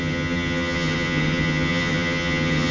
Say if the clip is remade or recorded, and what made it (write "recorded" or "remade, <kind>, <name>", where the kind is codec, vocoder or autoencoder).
remade, vocoder, HiFi-GAN